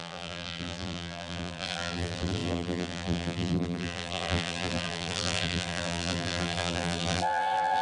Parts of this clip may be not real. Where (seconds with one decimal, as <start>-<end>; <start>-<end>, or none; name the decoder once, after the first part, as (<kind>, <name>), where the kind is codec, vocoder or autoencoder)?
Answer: 0.0-7.8 (vocoder, BigVGAN v2)